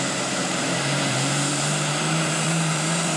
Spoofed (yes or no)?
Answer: yes